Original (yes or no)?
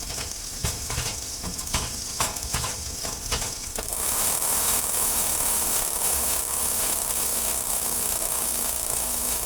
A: no